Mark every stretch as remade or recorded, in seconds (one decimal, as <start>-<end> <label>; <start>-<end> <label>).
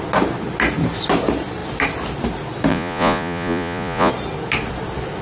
0.0-2.7 recorded; 2.7-4.1 remade; 4.1-5.2 recorded